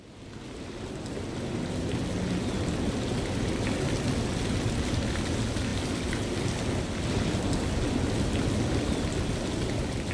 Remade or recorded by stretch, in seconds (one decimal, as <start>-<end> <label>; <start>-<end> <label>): 0.0-10.1 recorded